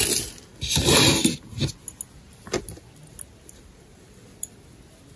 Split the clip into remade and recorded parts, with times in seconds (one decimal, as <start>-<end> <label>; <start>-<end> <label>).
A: 0.0-5.2 recorded

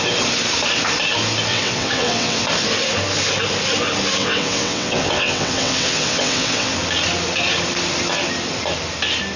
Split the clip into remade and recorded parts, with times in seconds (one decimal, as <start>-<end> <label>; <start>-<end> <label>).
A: 0.0-1.5 recorded; 1.5-2.4 remade; 2.4-4.2 recorded; 4.2-6.7 remade; 6.7-9.4 recorded

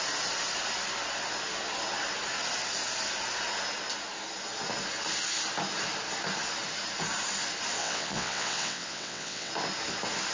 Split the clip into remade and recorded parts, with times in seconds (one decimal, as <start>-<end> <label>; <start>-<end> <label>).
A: 0.0-7.8 recorded; 7.8-9.5 remade; 9.5-10.3 recorded

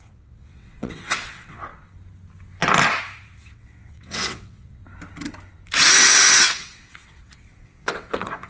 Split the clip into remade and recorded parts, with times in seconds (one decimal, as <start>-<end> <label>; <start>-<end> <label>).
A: 0.0-1.7 remade; 1.7-3.0 recorded; 3.0-4.8 remade; 4.8-6.0 recorded; 6.0-8.5 remade

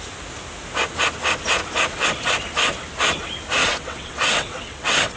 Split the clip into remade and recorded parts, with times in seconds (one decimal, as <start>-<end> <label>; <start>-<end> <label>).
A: 0.0-3.6 recorded; 3.6-5.2 remade

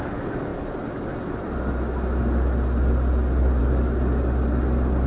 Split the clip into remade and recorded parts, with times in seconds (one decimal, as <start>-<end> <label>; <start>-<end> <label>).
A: 0.0-5.1 recorded

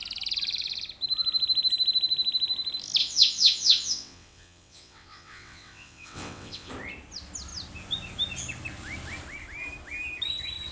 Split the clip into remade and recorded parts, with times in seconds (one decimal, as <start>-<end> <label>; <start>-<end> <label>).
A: 0.0-3.0 recorded; 3.0-6.7 remade; 6.7-10.7 recorded

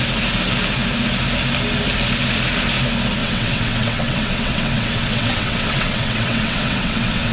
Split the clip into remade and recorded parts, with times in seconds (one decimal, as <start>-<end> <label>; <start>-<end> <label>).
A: 0.0-3.2 recorded; 3.2-7.3 remade